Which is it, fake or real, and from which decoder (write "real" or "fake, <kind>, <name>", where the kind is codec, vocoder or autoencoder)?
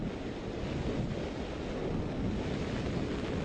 real